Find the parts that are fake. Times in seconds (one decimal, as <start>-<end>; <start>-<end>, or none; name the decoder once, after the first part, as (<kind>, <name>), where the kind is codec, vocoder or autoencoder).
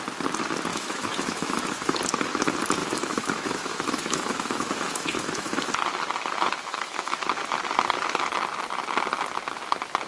0.7-2.0 (autoencoder, DAC-VAE); 2.8-5.7; 6.7-7.2